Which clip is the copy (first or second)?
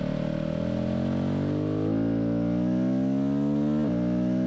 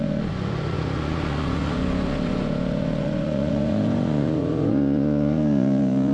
second